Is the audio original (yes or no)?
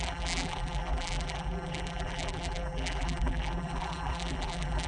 no